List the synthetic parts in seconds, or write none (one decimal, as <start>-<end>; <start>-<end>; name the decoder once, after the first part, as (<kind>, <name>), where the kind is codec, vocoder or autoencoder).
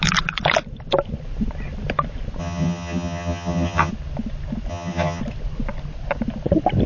2.4-3.9 (vocoder, HiFi-GAN); 4.7-5.2